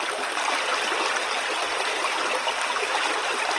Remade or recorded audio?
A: recorded